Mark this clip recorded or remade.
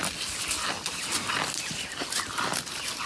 recorded